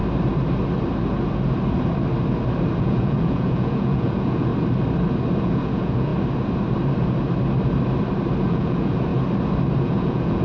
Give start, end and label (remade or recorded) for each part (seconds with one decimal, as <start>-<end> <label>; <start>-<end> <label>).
0.0-2.8 recorded; 2.8-4.5 remade; 4.5-5.4 recorded; 5.4-6.1 remade; 6.1-8.4 recorded; 8.4-9.1 remade; 9.1-9.8 recorded; 9.8-10.4 remade